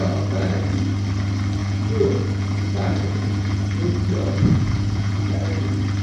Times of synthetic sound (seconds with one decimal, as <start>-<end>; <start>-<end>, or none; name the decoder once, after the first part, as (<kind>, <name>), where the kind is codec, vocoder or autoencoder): 1.6-3.9 (vocoder, Vocos); 4.4-5.2